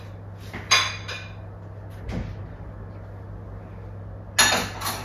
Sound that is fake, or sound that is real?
real